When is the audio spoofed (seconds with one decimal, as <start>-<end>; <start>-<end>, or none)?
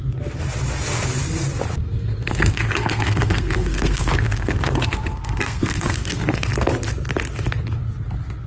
1.8-6.5